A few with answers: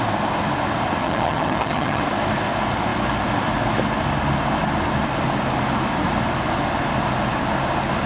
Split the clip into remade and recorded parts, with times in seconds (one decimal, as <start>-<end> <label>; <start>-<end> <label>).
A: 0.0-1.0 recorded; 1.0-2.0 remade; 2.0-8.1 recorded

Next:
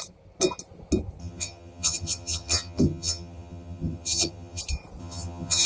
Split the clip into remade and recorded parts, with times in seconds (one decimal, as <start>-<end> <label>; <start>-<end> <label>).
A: 0.0-1.2 recorded; 1.2-4.6 remade; 4.6-5.0 recorded; 5.0-5.7 remade

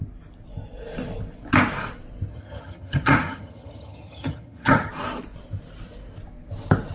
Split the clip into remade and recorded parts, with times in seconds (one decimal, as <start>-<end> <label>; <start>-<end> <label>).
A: 0.0-2.3 recorded; 2.3-4.9 remade; 4.9-6.9 recorded